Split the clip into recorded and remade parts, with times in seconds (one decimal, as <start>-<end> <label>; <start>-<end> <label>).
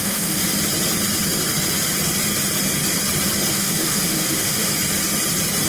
0.0-0.4 remade; 0.4-3.5 recorded; 3.5-4.7 remade; 4.7-5.7 recorded